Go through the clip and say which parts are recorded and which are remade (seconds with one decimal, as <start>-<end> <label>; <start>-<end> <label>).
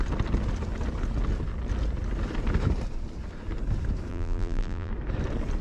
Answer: 0.0-4.1 recorded; 4.1-4.9 remade; 4.9-5.6 recorded